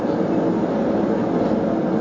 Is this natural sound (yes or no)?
yes